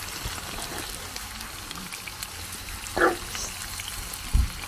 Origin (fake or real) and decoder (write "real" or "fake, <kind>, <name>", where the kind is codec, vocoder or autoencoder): real